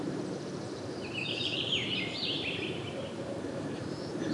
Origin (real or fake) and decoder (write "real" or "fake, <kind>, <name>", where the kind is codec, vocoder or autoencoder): fake, vocoder, BigVGAN v2